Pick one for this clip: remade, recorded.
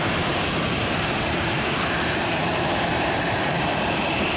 remade